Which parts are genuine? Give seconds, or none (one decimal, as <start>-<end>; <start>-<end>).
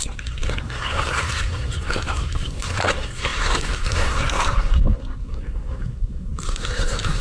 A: none